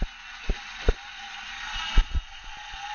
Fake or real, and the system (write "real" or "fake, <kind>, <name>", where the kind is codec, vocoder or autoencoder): real